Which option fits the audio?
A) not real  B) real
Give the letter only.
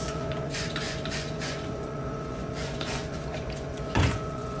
A